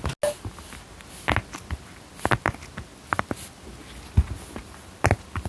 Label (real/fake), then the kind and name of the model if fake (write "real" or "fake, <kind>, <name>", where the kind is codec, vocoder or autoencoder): real